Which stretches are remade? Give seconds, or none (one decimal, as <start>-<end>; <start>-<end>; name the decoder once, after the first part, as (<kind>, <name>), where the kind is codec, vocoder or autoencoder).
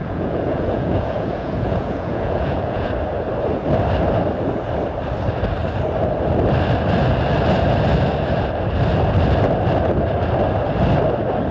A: 0.0-2.9 (vocoder, Vocos)